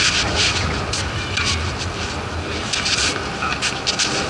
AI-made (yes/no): no